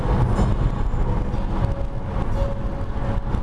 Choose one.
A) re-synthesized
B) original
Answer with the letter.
B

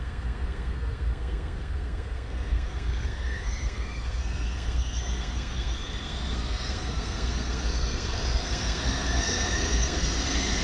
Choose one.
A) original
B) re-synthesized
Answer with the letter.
B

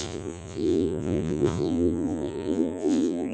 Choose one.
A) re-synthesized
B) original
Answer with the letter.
A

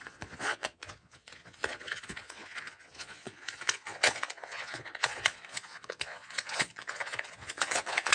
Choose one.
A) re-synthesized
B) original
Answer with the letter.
A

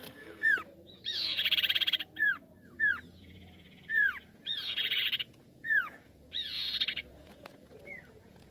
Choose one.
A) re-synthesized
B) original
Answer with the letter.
A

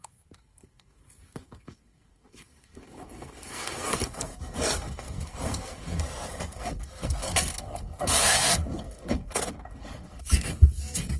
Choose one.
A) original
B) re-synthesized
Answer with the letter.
B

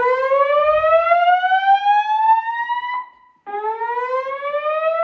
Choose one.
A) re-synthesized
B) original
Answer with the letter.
B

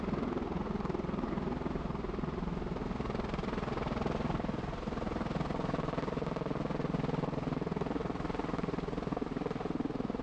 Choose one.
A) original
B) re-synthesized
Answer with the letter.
A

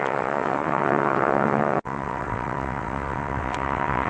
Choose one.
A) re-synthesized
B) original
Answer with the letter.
A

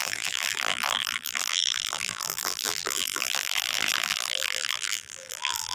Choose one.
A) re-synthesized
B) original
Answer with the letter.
A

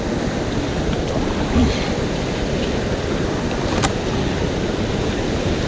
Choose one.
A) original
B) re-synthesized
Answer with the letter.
A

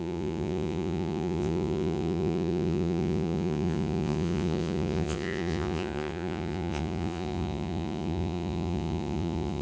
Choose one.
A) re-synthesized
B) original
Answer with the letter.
A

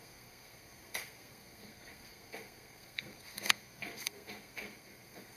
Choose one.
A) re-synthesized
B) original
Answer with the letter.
A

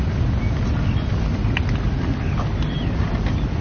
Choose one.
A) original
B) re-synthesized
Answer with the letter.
A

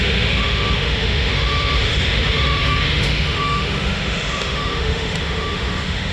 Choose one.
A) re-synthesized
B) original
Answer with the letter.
A